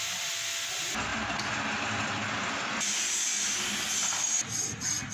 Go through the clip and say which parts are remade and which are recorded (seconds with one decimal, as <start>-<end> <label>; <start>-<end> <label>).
0.0-1.1 recorded; 1.1-3.0 remade; 3.0-5.1 recorded